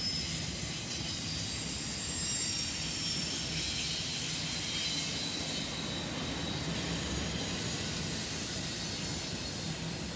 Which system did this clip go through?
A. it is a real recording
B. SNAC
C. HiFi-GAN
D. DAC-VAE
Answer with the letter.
A